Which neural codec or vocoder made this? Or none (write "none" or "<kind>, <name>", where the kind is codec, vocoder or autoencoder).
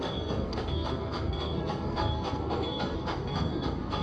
codec, SNAC